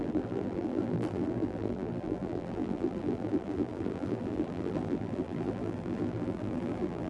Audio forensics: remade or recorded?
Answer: remade